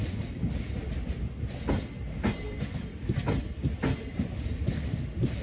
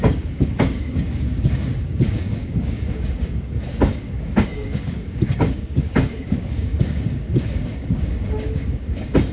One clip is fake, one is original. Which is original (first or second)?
first